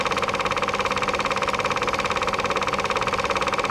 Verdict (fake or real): real